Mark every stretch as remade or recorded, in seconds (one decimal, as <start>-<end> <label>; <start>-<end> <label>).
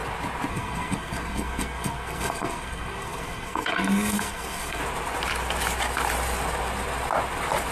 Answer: 0.0-0.5 recorded; 0.5-4.8 remade; 4.8-7.7 recorded